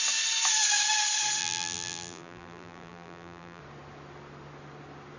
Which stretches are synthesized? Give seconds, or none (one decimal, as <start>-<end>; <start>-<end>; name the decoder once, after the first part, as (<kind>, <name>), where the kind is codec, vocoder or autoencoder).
1.4-3.6 (vocoder, BigVGAN v2)